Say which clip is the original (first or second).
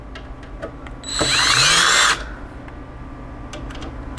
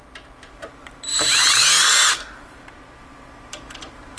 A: first